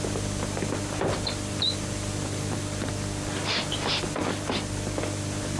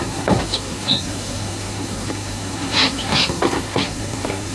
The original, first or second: first